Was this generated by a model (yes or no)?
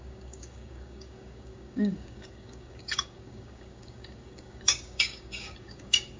yes